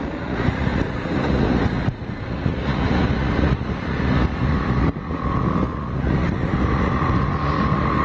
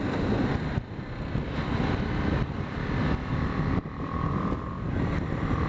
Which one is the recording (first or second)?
second